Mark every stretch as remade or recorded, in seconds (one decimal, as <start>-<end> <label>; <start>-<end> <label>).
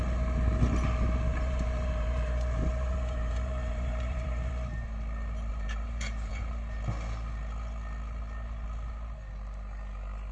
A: 0.0-1.3 recorded; 1.3-4.5 remade; 4.5-5.5 recorded; 5.5-6.5 remade; 6.5-10.3 recorded